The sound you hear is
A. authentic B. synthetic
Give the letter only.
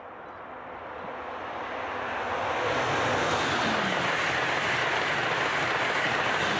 A